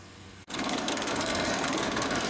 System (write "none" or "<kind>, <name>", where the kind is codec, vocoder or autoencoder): codec, SNAC